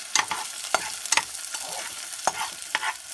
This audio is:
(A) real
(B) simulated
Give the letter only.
A